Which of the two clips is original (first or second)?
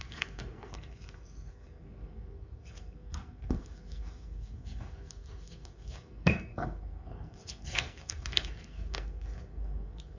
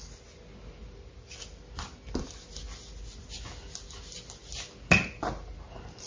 second